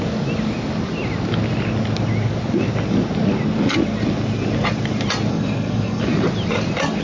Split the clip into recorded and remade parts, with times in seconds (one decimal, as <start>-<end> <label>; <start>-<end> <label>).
0.0-5.3 recorded; 5.3-6.0 remade; 6.0-7.0 recorded